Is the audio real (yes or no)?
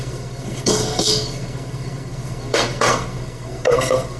no